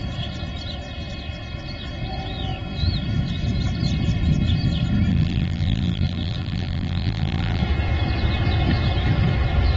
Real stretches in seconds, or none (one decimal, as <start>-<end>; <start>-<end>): 0.0-5.1; 7.6-9.8